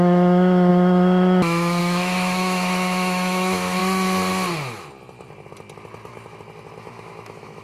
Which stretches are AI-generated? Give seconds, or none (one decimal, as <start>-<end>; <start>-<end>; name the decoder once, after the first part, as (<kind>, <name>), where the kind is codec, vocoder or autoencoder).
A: 0.0-3.8 (autoencoder, DAC-VAE); 6.8-7.6